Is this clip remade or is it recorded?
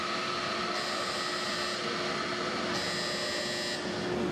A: recorded